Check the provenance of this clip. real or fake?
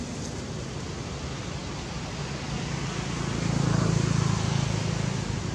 real